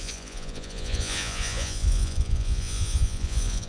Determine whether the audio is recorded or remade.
remade